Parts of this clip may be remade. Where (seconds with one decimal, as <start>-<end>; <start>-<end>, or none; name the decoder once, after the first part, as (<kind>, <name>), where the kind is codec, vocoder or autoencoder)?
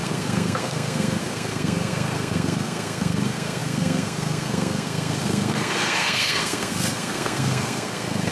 0.0-8.3 (codec, SNAC)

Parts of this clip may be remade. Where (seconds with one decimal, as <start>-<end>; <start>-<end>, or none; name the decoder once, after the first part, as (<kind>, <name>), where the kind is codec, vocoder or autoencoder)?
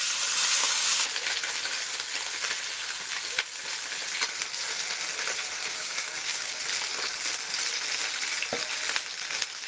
0.6-1.1 (codec, DAC); 5.6-6.6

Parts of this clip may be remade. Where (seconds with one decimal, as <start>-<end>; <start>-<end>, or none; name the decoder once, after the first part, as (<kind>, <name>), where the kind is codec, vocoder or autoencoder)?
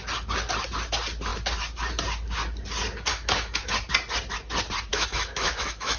3.1-3.7 (autoencoder, DAC-VAE); 4.9-6.0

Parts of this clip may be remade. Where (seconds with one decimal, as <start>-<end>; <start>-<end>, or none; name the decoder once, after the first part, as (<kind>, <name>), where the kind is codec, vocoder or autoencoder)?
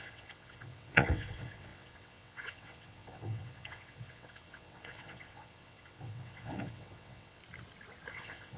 0.0-7.4 (vocoder, WaveNeXt); 8.1-8.6